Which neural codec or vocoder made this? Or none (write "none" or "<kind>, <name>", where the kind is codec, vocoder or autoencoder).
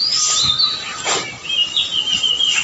none